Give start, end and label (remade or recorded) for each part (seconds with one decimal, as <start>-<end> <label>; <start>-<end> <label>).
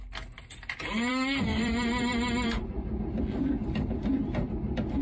0.0-1.5 recorded; 1.5-3.0 remade; 3.0-3.6 recorded; 3.6-4.5 remade; 4.5-5.0 recorded